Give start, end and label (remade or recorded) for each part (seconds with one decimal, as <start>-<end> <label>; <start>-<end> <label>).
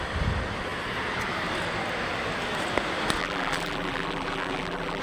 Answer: 0.0-3.2 recorded; 3.2-5.0 remade